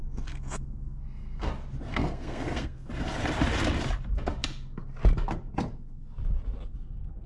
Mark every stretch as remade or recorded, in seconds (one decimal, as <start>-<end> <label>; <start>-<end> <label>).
0.0-1.5 remade; 1.5-1.9 recorded; 1.9-2.9 remade; 2.9-7.3 recorded

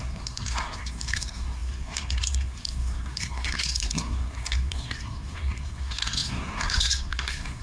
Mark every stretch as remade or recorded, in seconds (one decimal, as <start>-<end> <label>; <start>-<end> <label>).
0.0-7.6 remade